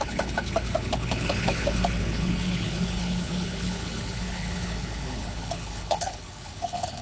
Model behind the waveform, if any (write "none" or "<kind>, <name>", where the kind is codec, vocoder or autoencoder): codec, HILCodec